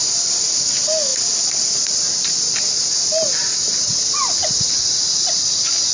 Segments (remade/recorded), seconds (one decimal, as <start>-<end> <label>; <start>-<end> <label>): 0.0-5.9 recorded